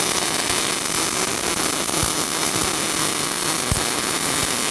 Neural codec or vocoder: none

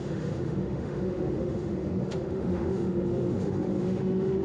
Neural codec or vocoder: autoencoder, DAC-VAE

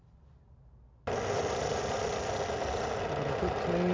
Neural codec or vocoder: none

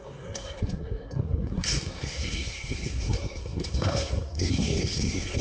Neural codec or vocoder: codec, SNAC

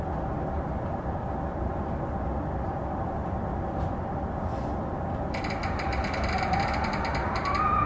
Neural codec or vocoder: none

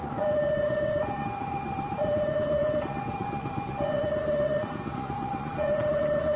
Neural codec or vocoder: vocoder, Vocos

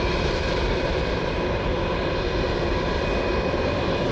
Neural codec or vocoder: none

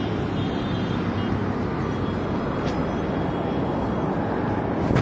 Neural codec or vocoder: none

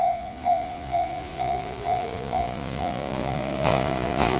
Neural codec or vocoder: vocoder, Vocos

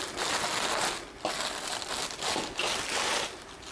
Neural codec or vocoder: none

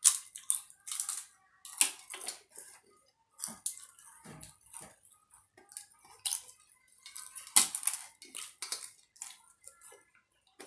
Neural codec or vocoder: none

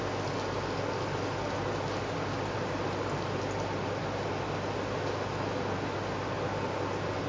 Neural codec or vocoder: none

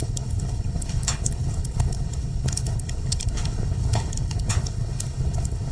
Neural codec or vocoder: codec, HILCodec